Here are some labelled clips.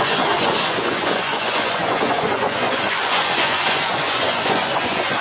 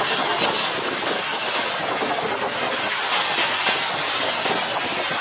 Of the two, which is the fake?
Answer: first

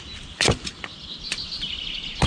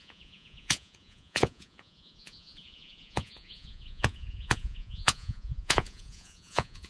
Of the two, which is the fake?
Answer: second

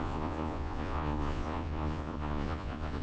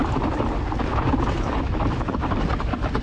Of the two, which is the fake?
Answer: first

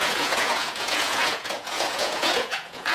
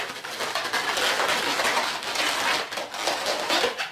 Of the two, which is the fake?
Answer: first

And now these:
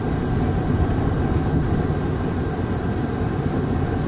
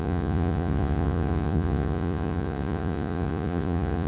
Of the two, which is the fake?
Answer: second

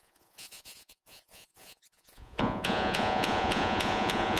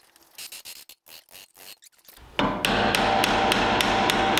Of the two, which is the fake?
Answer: first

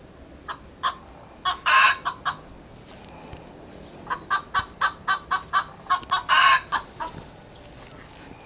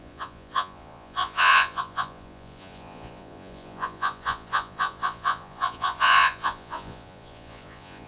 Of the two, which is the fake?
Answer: second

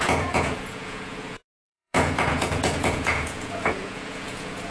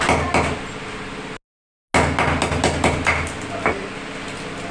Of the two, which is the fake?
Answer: first